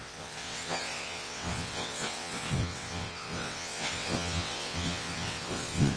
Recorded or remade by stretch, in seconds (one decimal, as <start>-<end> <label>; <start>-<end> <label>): 0.0-6.0 remade